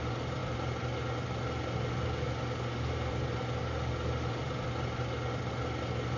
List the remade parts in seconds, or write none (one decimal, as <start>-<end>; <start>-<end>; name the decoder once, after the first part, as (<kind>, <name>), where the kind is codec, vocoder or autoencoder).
none